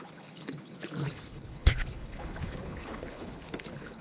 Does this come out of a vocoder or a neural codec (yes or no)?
yes